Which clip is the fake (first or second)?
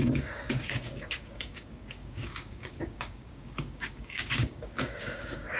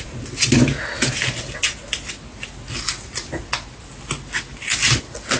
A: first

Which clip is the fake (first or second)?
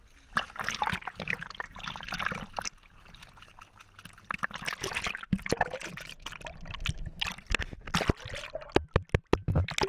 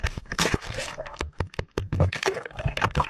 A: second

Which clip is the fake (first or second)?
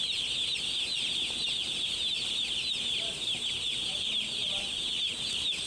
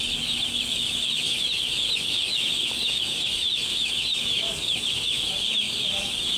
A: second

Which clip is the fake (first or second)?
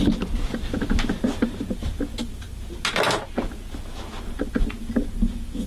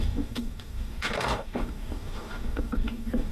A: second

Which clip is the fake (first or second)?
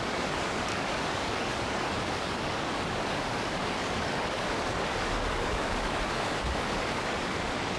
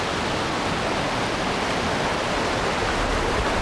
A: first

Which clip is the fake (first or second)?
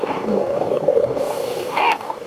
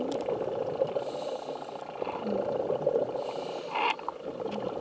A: first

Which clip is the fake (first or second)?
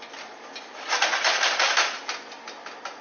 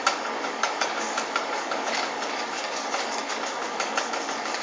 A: second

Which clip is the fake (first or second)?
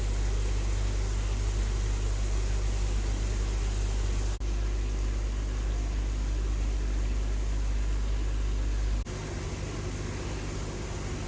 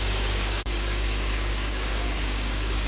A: second